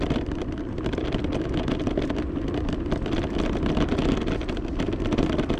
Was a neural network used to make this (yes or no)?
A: no